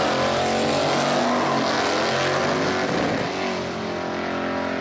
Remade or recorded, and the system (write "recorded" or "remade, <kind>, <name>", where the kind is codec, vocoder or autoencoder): recorded